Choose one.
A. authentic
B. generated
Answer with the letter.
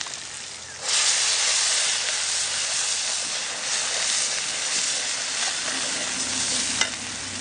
A